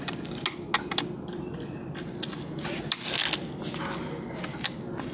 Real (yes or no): yes